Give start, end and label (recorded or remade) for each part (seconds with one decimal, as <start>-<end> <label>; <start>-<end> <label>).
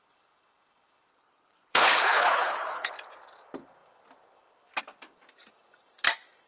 0.0-1.1 recorded; 1.1-2.9 remade; 2.9-6.5 recorded